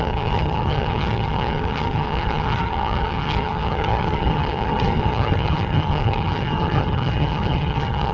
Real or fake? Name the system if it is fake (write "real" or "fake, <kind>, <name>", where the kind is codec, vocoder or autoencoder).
fake, vocoder, HiFi-GAN